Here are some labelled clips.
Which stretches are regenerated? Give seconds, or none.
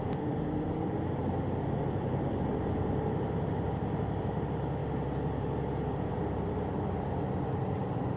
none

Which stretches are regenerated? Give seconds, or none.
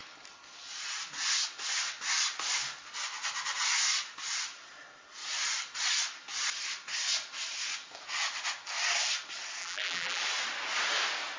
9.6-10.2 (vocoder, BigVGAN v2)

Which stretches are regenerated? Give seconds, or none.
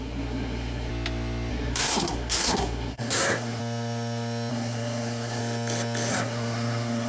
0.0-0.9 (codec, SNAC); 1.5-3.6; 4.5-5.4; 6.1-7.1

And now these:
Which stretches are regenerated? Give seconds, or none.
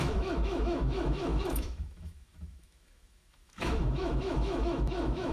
0.0-5.3 (autoencoder, DAC-VAE)